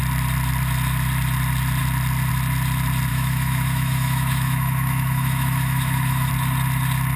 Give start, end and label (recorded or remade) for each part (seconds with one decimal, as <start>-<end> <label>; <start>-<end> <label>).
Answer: 0.0-3.1 recorded; 3.1-6.3 remade; 6.3-7.2 recorded